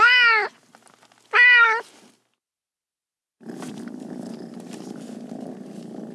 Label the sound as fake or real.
real